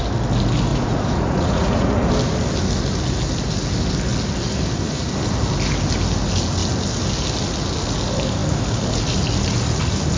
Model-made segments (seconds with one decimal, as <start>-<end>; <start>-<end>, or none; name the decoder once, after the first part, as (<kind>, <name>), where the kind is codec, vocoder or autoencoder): 0.7-2.1 (vocoder, Vocos)